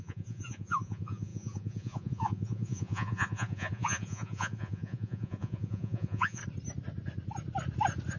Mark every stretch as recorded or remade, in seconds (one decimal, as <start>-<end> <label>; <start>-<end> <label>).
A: 0.0-6.4 remade; 6.4-8.2 recorded